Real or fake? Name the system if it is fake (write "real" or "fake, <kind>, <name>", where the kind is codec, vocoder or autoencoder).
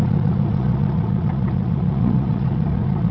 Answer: fake, vocoder, Vocos